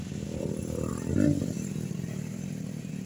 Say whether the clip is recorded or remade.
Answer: recorded